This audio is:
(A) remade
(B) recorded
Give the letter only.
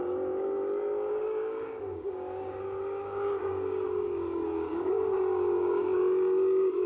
A